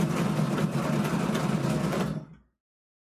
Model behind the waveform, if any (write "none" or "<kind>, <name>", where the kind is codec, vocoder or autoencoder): none